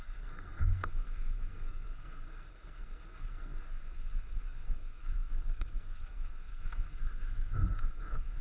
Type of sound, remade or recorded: remade